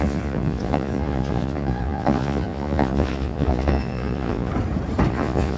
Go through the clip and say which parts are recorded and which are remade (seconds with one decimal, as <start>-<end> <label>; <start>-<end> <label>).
0.0-4.5 remade; 4.5-5.1 recorded; 5.1-5.6 remade